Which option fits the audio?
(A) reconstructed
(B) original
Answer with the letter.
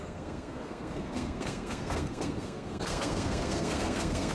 A